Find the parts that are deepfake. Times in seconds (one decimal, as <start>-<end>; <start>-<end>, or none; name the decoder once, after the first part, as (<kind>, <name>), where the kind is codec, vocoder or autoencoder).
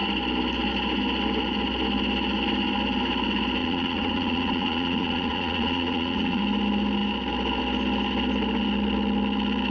3.6-6.4 (vocoder, Vocos)